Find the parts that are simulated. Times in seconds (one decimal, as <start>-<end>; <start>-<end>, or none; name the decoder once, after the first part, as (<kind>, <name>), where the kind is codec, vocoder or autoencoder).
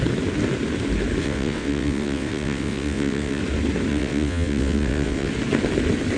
1.2-3.4 (vocoder, WaveNeXt); 3.9-5.3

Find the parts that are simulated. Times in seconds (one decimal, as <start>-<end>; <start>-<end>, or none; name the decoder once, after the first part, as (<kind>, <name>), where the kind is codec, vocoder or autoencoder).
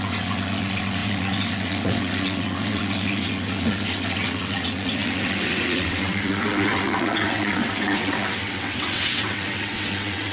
0.0-10.3 (vocoder, WaveNeXt)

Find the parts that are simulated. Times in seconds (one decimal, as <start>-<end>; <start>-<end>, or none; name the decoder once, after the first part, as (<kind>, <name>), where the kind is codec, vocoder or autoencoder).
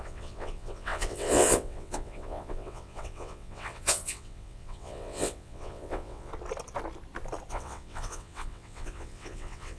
0.0-6.3 (vocoder, WaveNeXt); 7.5-9.8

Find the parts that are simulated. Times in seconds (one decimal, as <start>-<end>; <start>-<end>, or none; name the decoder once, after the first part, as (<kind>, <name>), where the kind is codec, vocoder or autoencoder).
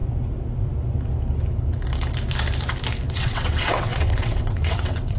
3.1-5.2 (vocoder, WaveNeXt)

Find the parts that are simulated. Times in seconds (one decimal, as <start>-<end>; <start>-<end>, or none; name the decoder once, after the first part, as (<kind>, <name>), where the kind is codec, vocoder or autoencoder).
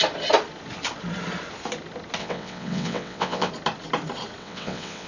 2.2-3.5 (vocoder, WaveNeXt); 4.4-5.1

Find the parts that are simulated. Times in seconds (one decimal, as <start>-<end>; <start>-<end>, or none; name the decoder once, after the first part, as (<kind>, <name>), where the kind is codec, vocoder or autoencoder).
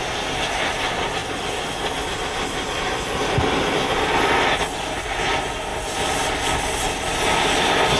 none